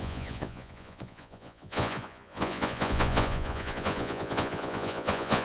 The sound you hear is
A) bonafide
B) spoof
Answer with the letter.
B